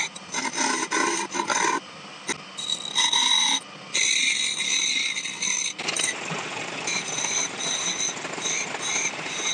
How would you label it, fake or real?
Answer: real